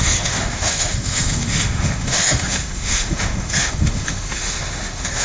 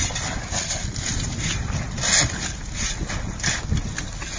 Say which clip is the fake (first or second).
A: first